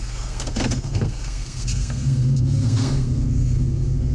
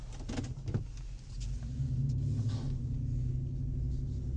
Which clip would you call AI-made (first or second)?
first